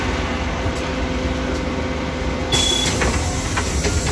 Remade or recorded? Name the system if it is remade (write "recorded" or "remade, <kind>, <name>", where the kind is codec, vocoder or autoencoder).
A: recorded